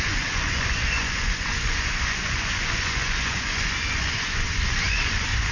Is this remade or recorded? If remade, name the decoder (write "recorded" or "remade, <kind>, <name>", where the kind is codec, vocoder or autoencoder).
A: remade, vocoder, Vocos